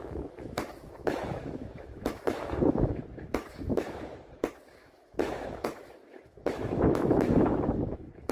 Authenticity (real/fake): fake